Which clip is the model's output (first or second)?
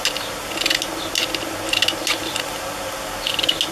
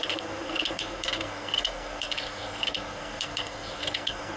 second